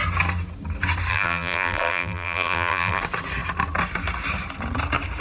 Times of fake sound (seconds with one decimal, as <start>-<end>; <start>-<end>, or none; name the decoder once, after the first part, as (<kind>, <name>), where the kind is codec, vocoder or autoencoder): 1.1-3.0 (vocoder, BigVGAN v2)